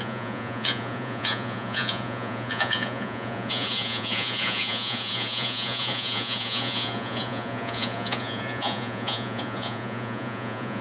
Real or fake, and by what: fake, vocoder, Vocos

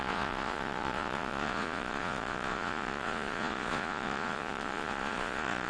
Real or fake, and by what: fake, vocoder, Vocos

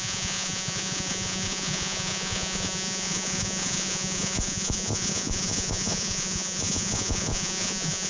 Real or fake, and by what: fake, vocoder, Vocos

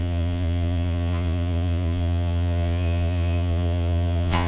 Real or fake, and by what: fake, vocoder, Vocos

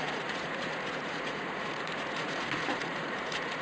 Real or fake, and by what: fake, vocoder, Vocos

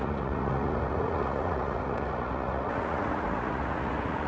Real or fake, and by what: fake, vocoder, Vocos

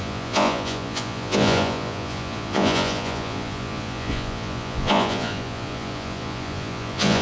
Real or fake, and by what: fake, vocoder, Vocos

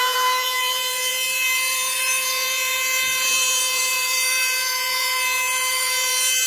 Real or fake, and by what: fake, vocoder, Vocos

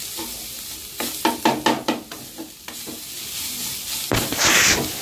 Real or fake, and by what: real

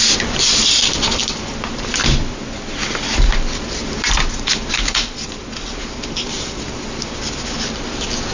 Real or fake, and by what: real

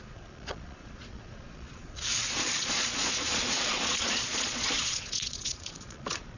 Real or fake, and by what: fake, vocoder, Vocos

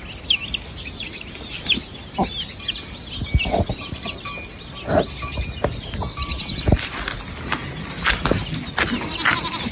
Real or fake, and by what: real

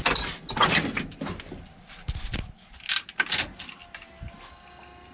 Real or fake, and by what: real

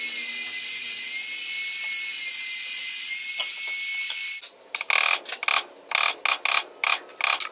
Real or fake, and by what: real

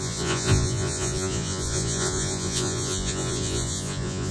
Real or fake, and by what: fake, vocoder, Vocos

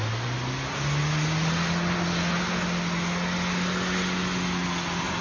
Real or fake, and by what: real